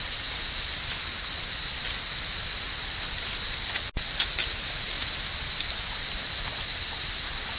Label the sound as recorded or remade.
recorded